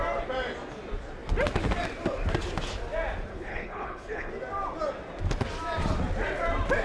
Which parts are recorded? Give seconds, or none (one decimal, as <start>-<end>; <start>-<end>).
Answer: 0.0-3.3; 4.3-6.8